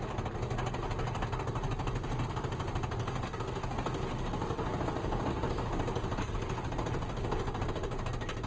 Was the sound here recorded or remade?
recorded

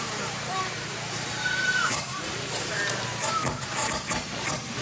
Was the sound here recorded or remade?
remade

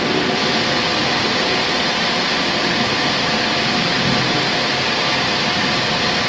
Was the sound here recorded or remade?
remade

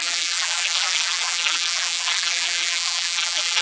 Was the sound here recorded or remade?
remade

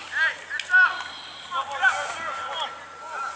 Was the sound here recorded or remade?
recorded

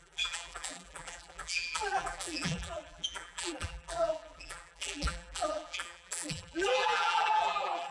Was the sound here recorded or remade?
remade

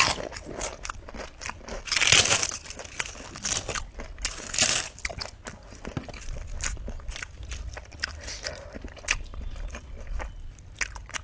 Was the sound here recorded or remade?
recorded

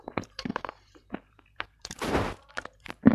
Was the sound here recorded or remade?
remade